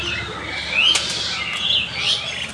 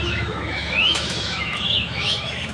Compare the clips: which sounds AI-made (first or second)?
second